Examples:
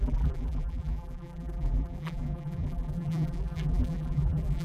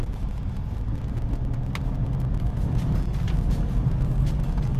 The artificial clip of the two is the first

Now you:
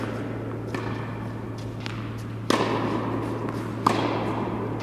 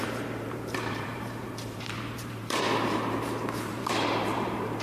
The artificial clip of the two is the second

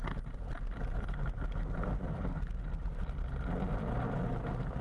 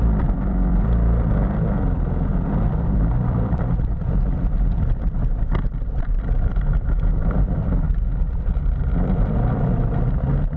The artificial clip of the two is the second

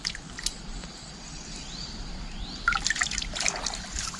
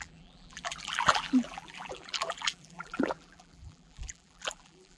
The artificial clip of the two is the second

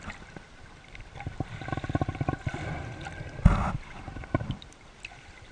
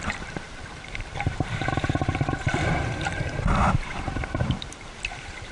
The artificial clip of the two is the second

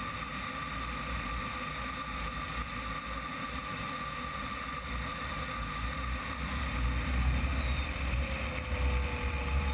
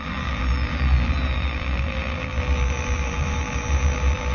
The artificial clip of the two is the second